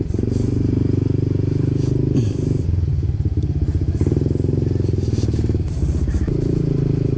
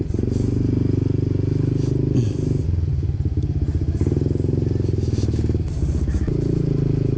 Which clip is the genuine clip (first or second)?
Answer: second